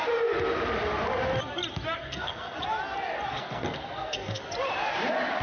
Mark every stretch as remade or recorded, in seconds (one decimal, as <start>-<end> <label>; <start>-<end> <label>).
0.0-2.0 recorded; 2.0-2.6 remade; 2.6-3.3 recorded; 3.3-4.4 remade; 4.4-5.4 recorded